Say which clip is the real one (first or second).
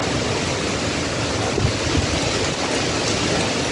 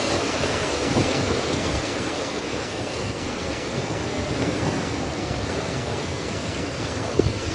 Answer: first